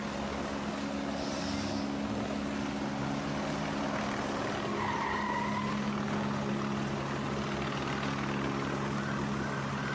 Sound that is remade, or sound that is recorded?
recorded